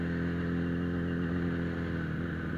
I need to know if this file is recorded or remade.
recorded